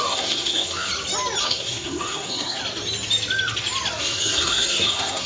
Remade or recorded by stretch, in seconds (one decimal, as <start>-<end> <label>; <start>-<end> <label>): 0.0-0.9 remade; 0.9-1.4 recorded; 1.4-2.6 remade; 2.6-4.0 recorded; 4.0-5.3 remade